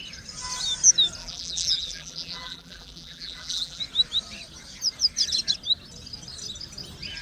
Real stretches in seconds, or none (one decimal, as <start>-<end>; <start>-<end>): 0.0-1.2; 3.8-7.2

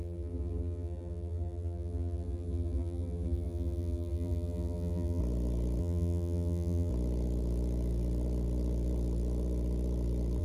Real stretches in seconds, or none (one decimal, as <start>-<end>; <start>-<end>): 5.2-5.8; 6.9-10.4

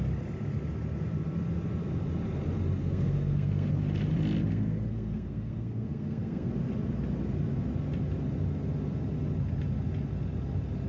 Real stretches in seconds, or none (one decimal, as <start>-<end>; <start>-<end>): 0.0-2.8; 3.7-4.5; 6.5-10.9

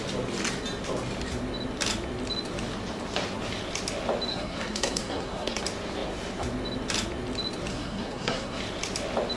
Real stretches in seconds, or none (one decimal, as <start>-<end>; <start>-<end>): 0.0-4.3; 5.6-7.7; 8.6-9.4

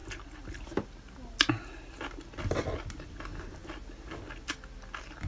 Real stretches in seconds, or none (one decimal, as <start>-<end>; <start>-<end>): 0.0-5.3

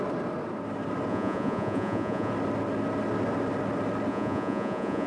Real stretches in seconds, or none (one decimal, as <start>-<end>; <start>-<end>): 0.0-1.1; 2.3-4.1

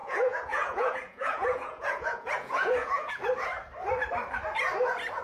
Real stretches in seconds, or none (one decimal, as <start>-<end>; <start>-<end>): 3.1-5.2

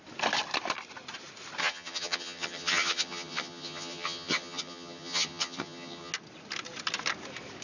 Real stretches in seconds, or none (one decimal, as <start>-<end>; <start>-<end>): 0.0-1.6; 6.1-7.6